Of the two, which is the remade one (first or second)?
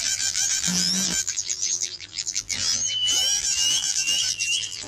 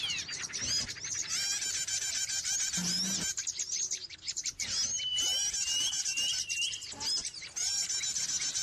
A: first